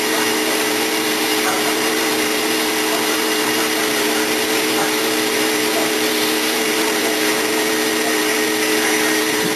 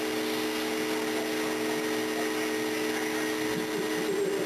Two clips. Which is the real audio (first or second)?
second